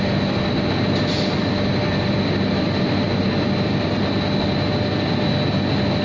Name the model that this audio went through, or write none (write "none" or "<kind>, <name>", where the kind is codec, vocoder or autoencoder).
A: none